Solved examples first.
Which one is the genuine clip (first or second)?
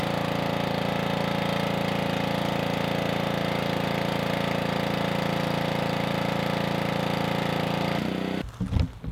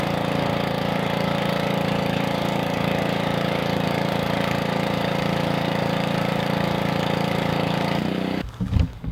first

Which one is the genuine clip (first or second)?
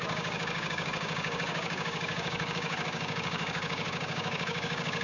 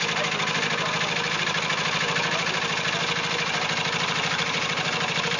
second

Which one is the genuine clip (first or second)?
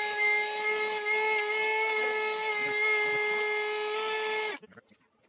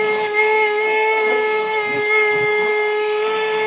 first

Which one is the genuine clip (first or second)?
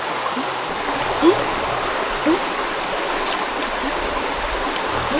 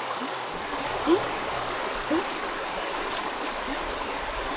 first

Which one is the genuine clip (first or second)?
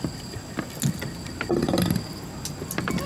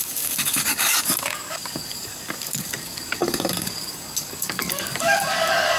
first